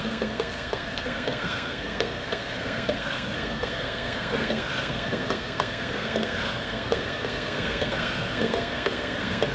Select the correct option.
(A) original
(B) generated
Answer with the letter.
B